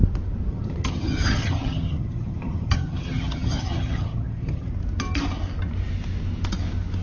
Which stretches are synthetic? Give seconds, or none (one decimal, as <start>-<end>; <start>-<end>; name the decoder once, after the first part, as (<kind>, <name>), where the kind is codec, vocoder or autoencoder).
0.5-4.7 (vocoder, HiFi-GAN)